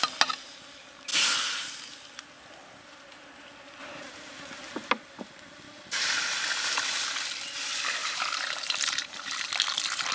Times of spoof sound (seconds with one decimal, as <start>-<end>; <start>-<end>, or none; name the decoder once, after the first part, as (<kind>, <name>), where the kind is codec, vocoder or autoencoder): 3.8-4.9 (vocoder, BigVGAN v2); 8.0-9.5